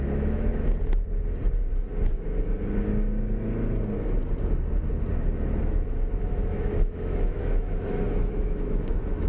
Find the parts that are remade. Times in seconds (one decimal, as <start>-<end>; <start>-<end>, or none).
0.0-0.6; 5.6-9.3